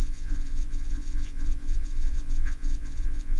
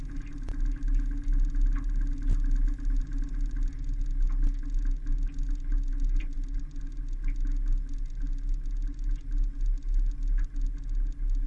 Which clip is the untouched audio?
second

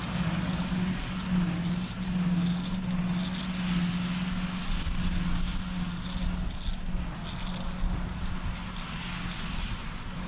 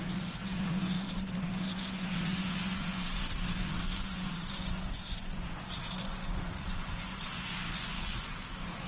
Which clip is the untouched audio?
first